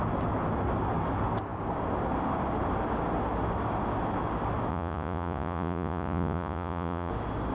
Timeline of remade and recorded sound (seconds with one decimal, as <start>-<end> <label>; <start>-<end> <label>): 0.0-4.7 recorded; 4.7-7.1 remade; 7.1-7.5 recorded